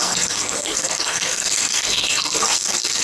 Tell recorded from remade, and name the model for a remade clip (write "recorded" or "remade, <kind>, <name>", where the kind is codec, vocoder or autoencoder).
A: remade, codec, SNAC